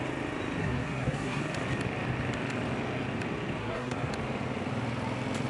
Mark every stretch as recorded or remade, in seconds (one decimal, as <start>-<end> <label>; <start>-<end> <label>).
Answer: 0.0-0.6 recorded; 0.6-1.4 remade; 1.4-3.6 recorded; 3.6-4.1 remade; 4.1-5.5 recorded